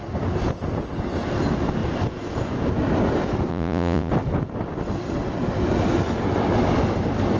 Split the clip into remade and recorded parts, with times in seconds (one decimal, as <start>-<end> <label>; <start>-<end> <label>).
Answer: 0.0-3.5 recorded; 3.5-4.1 remade; 4.1-7.4 recorded